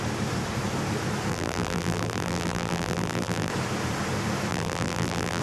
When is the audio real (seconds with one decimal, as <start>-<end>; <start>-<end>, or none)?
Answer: 0.0-1.3; 3.5-4.5